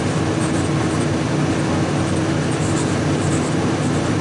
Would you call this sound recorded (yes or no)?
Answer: yes